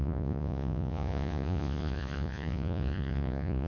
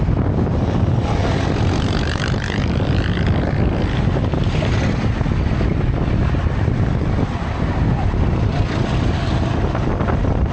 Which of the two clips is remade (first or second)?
first